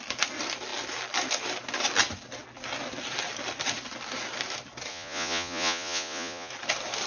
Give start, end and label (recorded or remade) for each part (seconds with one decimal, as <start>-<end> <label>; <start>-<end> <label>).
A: 0.0-4.9 recorded; 4.9-6.5 remade; 6.5-7.1 recorded